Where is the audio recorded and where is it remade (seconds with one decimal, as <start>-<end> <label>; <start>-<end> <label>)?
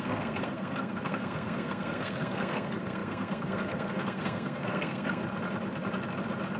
0.0-5.2 remade; 5.2-6.6 recorded